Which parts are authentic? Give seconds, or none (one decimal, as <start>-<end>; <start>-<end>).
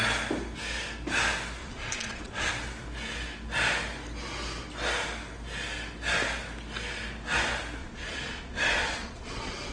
0.0-1.6; 2.5-7.8